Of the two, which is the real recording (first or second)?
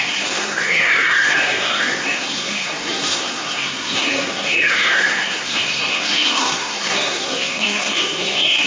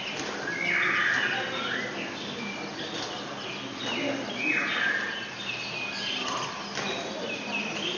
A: second